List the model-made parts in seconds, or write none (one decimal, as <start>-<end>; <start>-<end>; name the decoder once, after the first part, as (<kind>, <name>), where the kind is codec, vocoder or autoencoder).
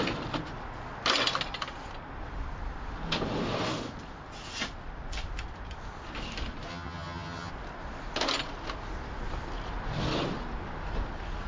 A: 6.7-7.5 (vocoder, HiFi-GAN)